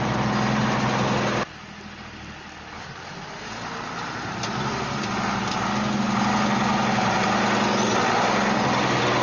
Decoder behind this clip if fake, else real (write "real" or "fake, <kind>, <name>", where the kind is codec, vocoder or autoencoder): real